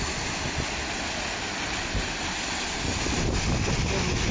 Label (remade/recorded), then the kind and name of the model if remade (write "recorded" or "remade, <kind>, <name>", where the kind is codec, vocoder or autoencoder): recorded